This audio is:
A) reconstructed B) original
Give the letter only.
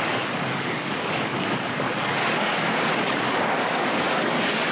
A